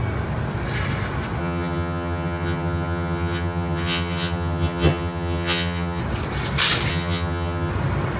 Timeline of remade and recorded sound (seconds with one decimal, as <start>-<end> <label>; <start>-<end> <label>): 0.0-1.4 recorded; 1.4-6.0 remade; 6.0-6.9 recorded; 6.9-7.7 remade; 7.7-8.2 recorded